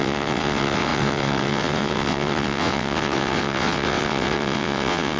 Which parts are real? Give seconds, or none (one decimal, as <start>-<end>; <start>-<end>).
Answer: none

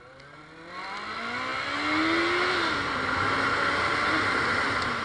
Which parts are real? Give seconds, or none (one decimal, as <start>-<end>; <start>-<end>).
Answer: 0.0-5.0

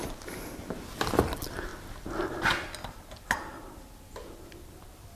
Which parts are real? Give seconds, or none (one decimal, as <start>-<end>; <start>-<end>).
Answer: 0.0-5.2